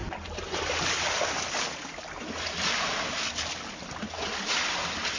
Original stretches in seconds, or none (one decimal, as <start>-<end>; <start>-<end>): 0.0-5.2